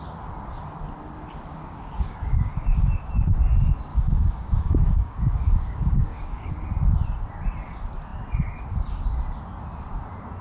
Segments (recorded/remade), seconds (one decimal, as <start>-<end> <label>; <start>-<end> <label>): 0.0-1.5 recorded; 1.5-2.5 remade; 2.5-3.9 recorded; 3.9-6.5 remade; 6.5-10.4 recorded